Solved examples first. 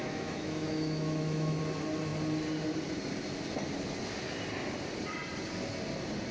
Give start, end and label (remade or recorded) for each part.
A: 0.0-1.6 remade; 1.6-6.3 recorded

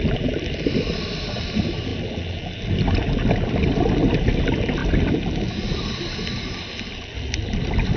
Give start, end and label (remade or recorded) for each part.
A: 0.0-8.0 recorded